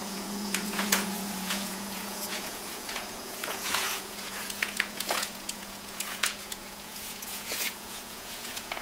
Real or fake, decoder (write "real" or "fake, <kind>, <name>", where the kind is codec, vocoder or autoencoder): fake, vocoder, Vocos